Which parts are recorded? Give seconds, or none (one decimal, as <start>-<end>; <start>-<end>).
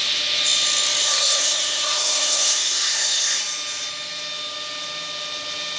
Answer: 0.0-1.0; 3.4-5.8